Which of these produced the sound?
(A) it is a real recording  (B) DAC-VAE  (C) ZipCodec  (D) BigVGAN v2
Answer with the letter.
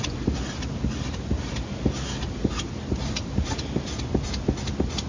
A